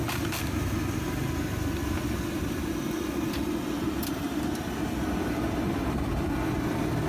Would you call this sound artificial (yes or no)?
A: no